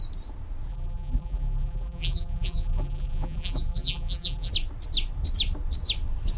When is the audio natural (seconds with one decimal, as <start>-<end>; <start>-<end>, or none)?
0.0-0.7; 4.5-6.4